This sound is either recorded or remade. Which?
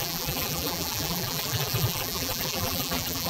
remade